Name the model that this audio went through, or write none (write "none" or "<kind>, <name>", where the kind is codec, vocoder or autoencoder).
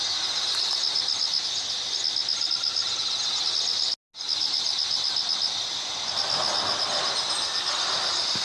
none